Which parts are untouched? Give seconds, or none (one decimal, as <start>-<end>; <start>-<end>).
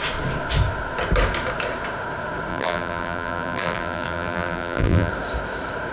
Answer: 0.0-2.5; 5.1-5.9